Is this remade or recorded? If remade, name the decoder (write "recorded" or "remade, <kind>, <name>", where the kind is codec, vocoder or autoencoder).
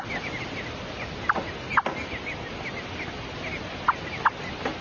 recorded